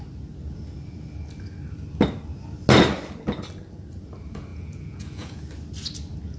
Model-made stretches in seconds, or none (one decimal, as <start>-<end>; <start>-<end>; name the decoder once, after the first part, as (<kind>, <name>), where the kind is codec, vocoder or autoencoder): 4.5-5.4 (vocoder, Vocos)